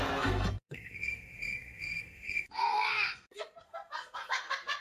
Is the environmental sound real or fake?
fake